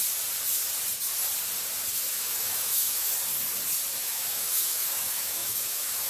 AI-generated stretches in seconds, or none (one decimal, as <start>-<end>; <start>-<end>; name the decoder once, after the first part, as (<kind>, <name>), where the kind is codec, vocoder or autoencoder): 1.9-3.1 (autoencoder, DAC-VAE); 3.9-6.1